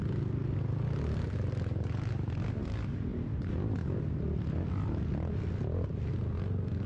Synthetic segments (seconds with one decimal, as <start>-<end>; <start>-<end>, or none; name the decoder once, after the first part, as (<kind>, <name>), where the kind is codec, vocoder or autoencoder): none